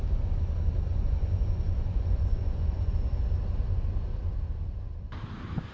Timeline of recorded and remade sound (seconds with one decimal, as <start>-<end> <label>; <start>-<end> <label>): 0.0-0.9 recorded; 0.9-2.9 remade; 2.9-5.7 recorded